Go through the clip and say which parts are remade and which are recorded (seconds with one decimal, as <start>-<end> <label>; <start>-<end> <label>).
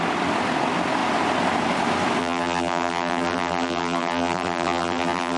0.0-2.2 recorded; 2.2-5.4 remade